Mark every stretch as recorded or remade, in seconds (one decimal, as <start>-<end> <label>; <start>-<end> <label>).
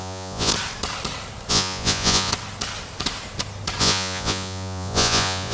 0.0-0.5 remade; 0.5-1.5 recorded; 1.5-2.3 remade; 2.3-3.8 recorded; 3.8-5.5 remade